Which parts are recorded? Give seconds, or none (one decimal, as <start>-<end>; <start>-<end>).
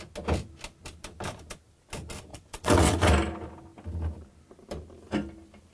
0.0-2.3; 3.1-5.7